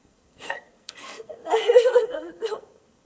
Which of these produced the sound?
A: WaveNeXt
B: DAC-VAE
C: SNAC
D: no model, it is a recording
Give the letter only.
C